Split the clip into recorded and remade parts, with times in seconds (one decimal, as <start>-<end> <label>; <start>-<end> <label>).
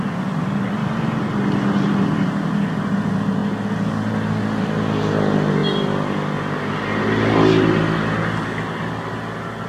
0.0-9.7 recorded